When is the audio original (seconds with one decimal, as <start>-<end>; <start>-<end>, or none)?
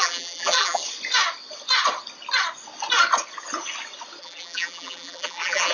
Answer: 0.8-4.2